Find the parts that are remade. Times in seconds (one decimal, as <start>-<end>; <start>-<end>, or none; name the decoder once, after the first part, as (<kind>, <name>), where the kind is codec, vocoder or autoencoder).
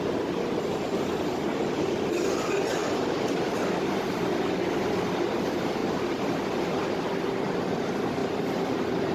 2.8-3.5 (vocoder, BigVGAN v2); 5.8-6.9; 8.2-9.1